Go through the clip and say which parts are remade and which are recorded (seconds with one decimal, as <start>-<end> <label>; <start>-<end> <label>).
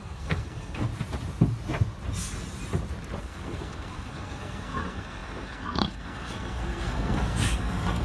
0.0-0.9 remade; 0.9-3.2 recorded; 3.2-8.0 remade